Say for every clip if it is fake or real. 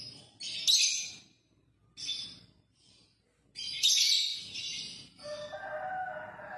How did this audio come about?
real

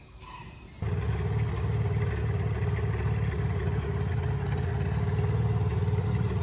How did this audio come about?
real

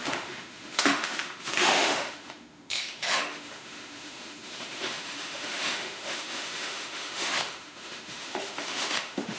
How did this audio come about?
fake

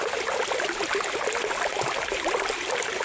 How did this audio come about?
real